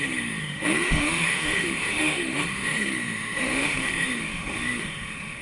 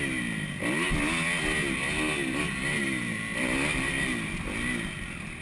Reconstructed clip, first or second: first